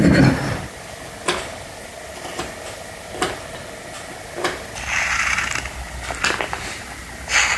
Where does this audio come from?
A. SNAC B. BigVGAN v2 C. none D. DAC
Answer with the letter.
C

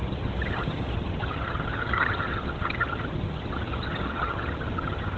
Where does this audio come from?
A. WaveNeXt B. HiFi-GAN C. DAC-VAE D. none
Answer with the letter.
B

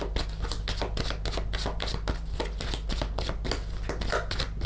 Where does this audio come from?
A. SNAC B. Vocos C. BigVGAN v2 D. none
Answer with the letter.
D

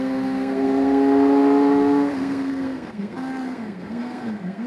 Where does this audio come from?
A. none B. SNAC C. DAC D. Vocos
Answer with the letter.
B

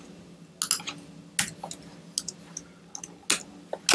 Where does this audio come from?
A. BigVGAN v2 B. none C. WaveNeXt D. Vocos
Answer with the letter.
B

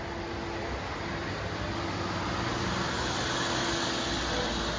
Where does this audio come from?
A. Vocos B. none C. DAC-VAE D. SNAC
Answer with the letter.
B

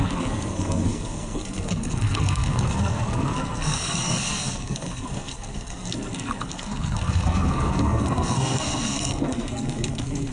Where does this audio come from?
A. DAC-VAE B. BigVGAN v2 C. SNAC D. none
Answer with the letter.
C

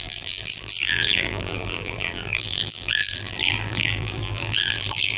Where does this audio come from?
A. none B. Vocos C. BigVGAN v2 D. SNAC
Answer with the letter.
C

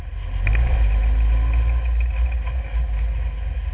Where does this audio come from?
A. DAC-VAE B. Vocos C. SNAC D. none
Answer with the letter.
D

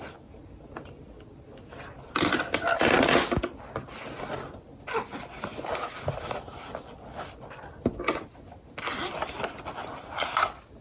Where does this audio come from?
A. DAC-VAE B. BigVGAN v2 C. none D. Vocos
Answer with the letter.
C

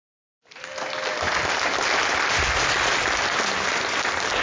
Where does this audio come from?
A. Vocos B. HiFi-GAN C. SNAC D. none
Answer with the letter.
D